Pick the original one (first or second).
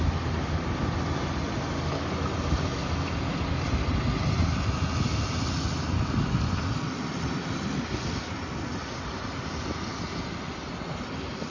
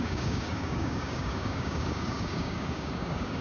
first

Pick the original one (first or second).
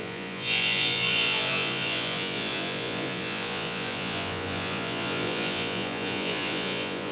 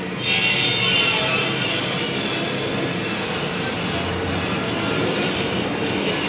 second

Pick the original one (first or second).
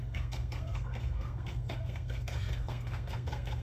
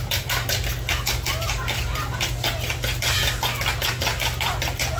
second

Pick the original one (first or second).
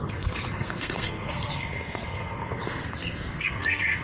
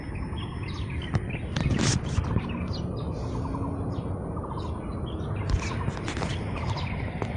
second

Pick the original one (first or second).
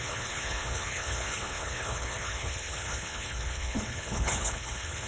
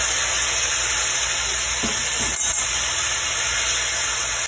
second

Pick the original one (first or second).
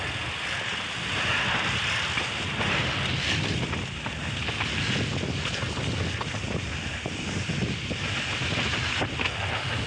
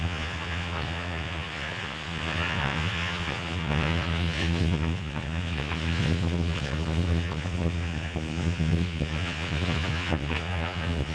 first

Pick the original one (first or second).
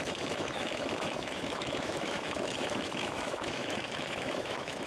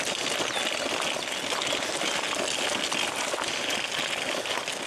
second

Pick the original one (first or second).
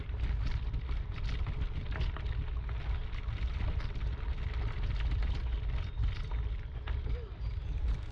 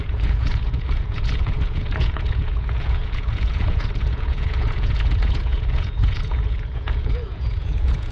first